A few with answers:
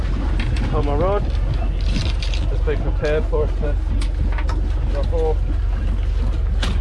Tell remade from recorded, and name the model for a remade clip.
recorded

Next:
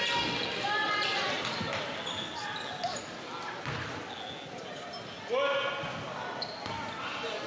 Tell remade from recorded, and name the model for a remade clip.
recorded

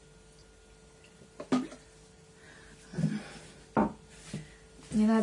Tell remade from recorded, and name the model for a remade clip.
recorded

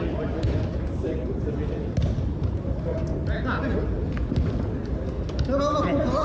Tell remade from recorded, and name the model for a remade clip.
recorded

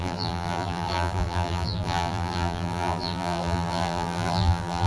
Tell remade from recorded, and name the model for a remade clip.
remade, vocoder, BigVGAN v2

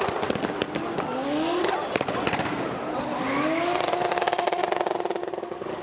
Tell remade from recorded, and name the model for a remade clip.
recorded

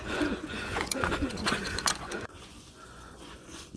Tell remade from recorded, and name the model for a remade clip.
remade, vocoder, Vocos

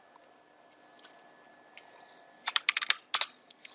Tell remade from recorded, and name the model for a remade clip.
recorded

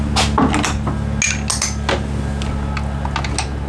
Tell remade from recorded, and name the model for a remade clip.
recorded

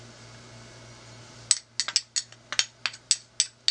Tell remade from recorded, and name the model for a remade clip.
recorded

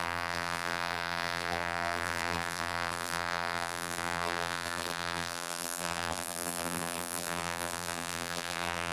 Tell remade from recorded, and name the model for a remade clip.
remade, vocoder, BigVGAN v2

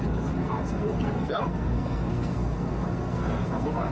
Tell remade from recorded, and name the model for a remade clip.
remade, codec, SNAC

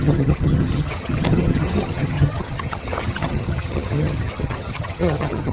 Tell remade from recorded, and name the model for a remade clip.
remade, vocoder, HiFi-GAN